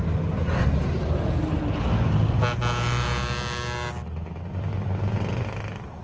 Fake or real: real